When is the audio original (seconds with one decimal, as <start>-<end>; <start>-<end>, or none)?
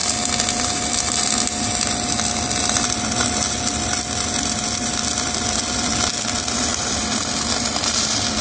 0.0-8.4